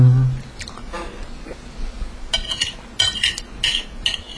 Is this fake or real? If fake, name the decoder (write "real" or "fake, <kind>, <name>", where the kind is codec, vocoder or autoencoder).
real